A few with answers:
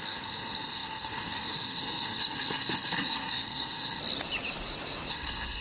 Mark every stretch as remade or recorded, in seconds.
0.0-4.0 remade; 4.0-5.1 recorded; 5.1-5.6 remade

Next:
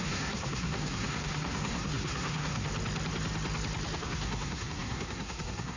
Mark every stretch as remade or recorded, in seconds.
0.0-2.7 remade; 2.7-4.0 recorded; 4.0-5.8 remade

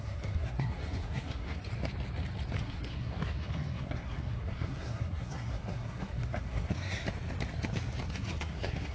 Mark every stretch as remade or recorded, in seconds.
0.0-1.6 remade; 1.6-2.6 recorded; 2.6-7.0 remade; 7.0-8.1 recorded; 8.1-8.9 remade

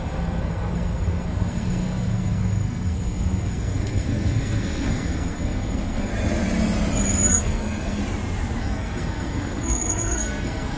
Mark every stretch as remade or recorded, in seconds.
0.0-6.1 remade; 6.1-7.3 recorded; 7.3-8.0 remade; 8.0-8.6 recorded; 8.6-10.8 remade